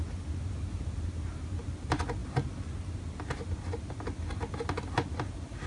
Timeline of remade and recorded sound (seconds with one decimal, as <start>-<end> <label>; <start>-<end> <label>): 0.0-5.7 recorded